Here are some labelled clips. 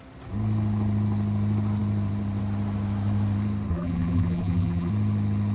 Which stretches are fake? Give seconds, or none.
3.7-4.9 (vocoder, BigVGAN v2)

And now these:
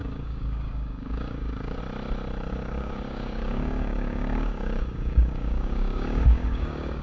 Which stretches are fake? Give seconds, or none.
0.0-1.8 (codec, DAC); 2.5-7.0

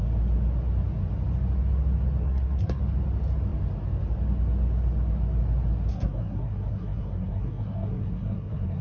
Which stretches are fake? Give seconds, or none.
2.2-2.8 (codec, SNAC); 5.9-8.8